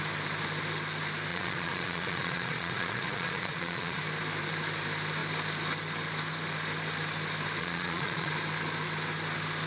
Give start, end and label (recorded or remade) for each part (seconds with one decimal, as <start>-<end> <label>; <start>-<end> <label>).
0.0-1.3 recorded; 1.3-4.0 remade; 4.0-7.6 recorded; 7.6-8.3 remade; 8.3-9.7 recorded